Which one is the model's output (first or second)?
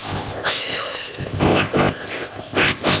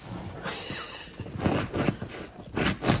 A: first